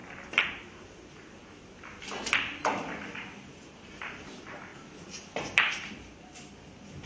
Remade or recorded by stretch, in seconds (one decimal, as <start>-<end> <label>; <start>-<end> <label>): 0.0-7.1 recorded